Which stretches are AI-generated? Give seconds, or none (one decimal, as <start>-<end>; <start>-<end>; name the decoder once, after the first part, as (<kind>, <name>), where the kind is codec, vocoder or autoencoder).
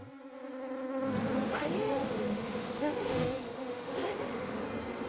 1.5-4.6 (autoencoder, DAC-VAE)